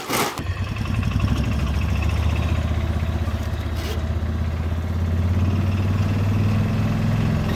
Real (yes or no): yes